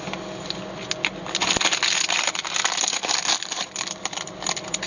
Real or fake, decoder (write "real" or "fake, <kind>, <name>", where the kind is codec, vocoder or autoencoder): real